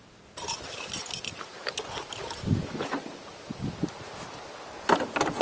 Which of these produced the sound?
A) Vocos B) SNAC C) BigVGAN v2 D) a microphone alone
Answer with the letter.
D